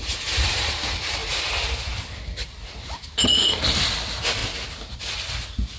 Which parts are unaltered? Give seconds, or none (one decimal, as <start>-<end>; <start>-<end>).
0.7-5.8